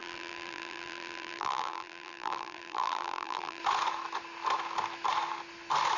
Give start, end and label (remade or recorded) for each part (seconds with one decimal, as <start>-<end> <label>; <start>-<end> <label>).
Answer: 0.0-3.6 remade; 3.6-6.0 recorded